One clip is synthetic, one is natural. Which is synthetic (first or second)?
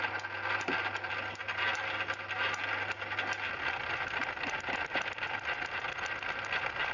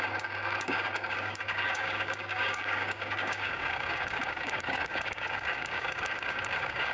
second